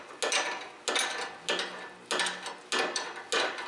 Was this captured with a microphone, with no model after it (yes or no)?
yes